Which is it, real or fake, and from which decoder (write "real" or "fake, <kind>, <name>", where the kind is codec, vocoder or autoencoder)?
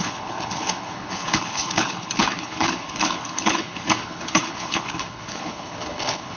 fake, codec, HILCodec